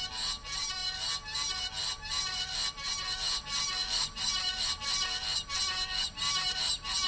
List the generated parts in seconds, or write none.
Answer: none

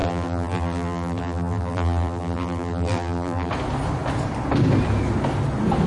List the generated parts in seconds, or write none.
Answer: 0.0-3.5

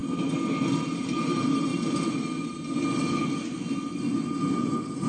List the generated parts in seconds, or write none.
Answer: 1.0-1.7

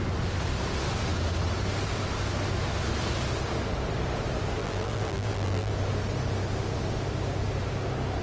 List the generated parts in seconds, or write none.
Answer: 4.6-5.7

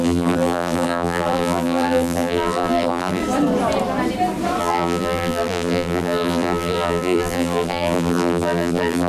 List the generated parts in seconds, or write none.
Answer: 0.0-3.2; 4.6-9.1